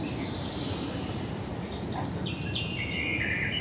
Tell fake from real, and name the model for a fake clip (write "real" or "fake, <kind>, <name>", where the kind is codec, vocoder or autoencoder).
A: real